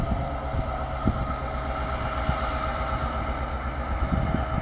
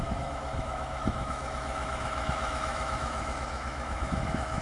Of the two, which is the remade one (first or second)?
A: second